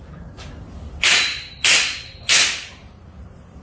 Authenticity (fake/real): real